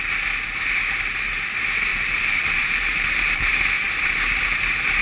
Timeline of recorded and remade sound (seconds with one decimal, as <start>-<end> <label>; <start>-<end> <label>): 0.0-1.9 recorded; 1.9-3.5 remade; 3.5-5.0 recorded